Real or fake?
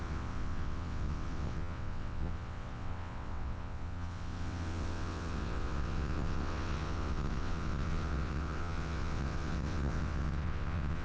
fake